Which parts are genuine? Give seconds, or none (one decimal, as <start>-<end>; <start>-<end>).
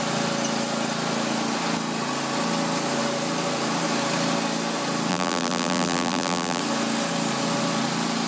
0.0-5.1; 6.6-8.3